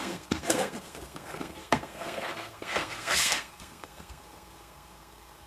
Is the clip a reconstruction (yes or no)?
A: yes